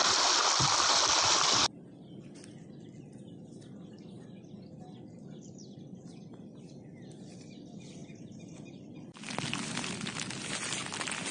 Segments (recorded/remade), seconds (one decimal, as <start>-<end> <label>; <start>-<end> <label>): 0.0-8.0 recorded; 8.0-9.9 remade; 9.9-11.3 recorded